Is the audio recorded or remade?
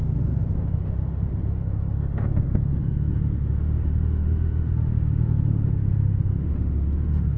remade